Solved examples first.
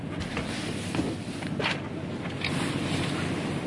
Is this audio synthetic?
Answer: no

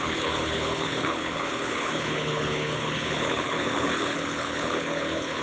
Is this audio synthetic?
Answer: yes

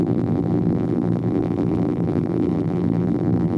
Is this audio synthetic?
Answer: yes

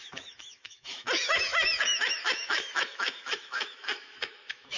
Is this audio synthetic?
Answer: yes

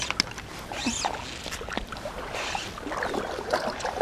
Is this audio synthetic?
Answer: no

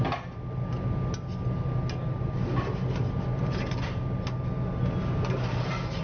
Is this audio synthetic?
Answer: no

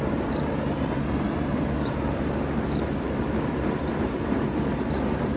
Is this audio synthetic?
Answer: yes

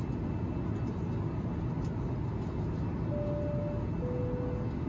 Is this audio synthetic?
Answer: no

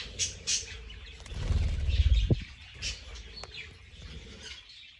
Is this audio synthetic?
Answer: no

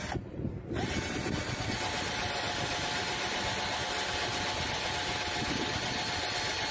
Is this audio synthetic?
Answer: no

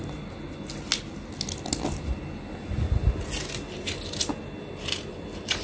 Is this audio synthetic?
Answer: no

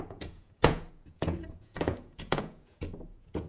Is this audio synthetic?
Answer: yes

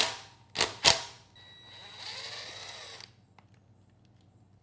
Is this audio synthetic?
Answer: no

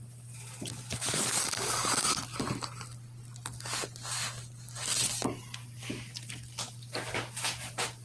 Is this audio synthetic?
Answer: no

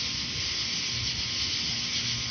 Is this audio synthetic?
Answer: no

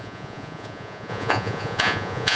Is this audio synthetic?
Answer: yes